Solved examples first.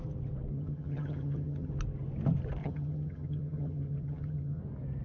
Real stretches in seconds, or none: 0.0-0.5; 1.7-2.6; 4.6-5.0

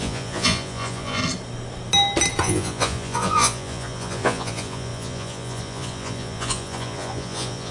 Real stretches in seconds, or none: 1.2-2.4

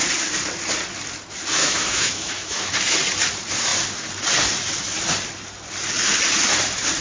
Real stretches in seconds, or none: 0.0-1.6; 2.7-7.0

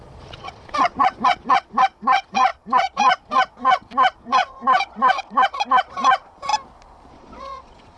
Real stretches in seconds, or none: 6.5-7.1

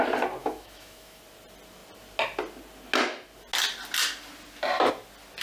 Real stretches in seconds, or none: 0.0-0.4; 1.2-5.4